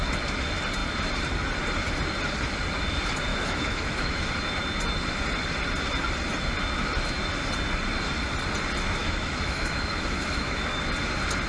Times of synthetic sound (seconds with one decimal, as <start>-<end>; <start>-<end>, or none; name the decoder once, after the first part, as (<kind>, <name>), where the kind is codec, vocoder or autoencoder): 3.3-4.3 (autoencoder, DAC-VAE); 9.0-10.8

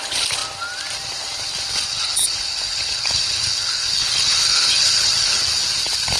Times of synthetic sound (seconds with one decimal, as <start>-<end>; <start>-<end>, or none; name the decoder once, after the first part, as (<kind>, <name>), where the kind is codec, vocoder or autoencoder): 1.9-5.4 (codec, HILCodec)

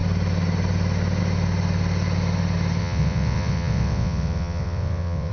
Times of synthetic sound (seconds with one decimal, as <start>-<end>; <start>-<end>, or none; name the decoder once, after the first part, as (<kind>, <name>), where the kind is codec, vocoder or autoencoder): 2.8-5.3 (vocoder, WaveNeXt)

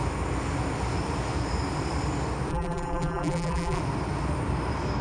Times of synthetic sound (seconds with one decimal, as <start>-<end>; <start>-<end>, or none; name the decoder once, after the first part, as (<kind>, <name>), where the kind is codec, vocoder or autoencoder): 2.5-3.8 (vocoder, BigVGAN v2)